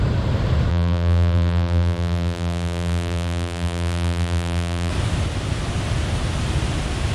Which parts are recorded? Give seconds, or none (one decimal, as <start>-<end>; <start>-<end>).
0.0-0.7; 4.9-7.1